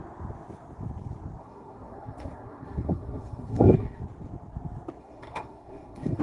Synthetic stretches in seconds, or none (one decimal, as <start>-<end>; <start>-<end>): 1.4-4.0; 5.0-6.2